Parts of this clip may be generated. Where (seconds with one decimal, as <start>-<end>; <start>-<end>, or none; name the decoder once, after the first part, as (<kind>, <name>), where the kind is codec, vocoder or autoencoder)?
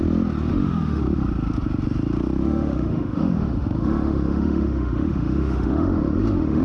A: 0.5-1.0 (autoencoder, DAC-VAE); 2.4-6.6